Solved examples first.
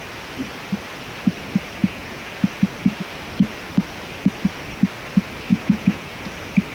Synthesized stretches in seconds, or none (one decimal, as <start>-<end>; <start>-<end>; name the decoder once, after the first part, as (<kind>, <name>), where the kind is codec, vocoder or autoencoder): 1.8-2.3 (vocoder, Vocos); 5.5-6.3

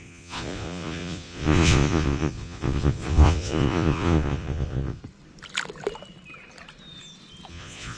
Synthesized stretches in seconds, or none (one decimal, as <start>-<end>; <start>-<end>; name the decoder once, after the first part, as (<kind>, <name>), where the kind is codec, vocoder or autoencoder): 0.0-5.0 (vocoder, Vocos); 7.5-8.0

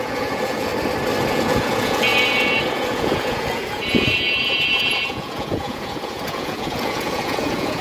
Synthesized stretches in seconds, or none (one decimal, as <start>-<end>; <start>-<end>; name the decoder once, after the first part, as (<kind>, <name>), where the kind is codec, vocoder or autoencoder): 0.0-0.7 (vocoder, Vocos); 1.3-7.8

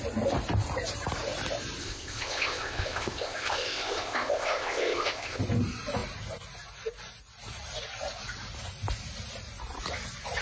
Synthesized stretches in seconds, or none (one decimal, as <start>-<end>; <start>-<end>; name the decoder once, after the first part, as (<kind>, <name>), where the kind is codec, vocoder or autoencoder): 1.8-5.4 (codec, ZipCodec)